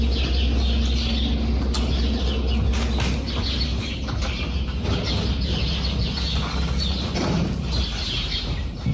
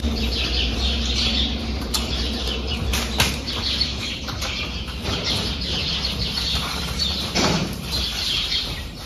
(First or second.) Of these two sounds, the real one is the first